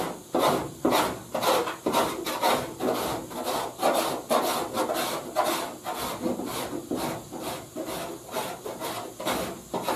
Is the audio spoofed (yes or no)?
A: no